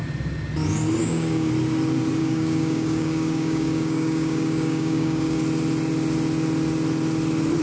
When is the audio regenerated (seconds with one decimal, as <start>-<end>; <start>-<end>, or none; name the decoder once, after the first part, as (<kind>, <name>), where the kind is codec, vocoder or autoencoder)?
1.0-1.5 (codec, DAC); 2.2-5.4